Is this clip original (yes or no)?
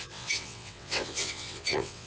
no